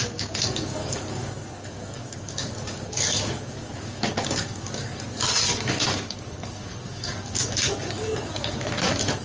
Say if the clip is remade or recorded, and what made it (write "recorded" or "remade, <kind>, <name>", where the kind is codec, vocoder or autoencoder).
remade, codec, DAC